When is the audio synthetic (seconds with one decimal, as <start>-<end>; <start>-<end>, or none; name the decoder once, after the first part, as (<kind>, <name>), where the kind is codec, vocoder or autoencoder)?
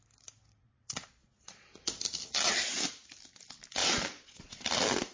0.6-1.8 (vocoder, Vocos); 3.8-4.6